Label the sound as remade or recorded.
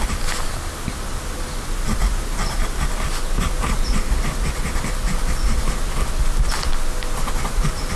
recorded